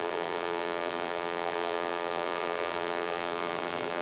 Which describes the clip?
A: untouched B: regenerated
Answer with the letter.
B